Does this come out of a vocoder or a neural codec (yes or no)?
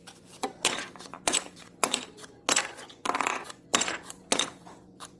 yes